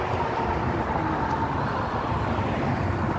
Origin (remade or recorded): recorded